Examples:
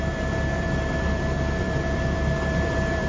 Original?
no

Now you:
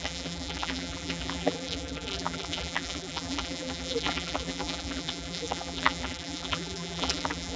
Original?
no